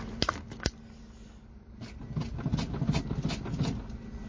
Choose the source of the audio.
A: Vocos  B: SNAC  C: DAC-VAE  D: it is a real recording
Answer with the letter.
D